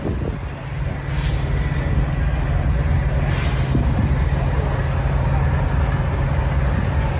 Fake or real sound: real